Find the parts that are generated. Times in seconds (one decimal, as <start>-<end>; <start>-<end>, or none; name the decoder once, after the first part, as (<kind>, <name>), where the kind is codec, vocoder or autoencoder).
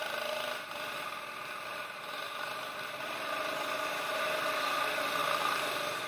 none